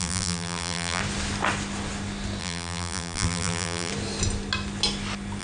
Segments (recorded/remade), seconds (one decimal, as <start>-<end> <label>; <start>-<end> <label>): 0.0-1.0 remade; 1.0-2.4 recorded; 2.4-3.9 remade; 3.9-5.4 recorded